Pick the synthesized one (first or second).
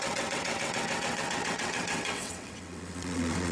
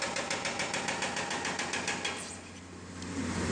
first